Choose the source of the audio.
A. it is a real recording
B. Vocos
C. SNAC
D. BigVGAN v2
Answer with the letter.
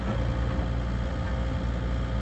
A